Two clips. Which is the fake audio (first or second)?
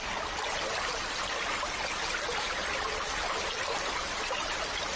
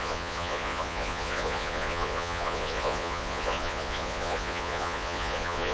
second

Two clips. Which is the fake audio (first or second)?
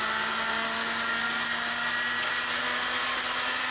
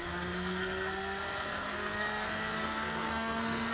second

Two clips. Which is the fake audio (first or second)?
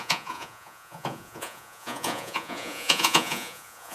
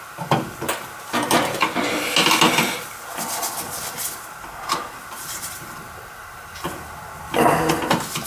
first